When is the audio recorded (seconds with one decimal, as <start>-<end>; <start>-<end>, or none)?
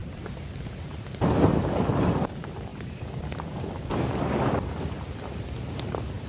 none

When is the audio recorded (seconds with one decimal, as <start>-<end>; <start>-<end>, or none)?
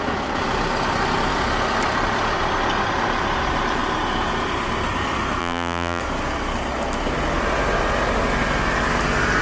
0.0-5.4; 6.0-9.4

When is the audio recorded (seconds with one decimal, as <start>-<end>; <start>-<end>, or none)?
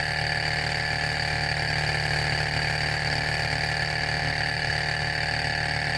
0.0-4.2; 4.7-6.0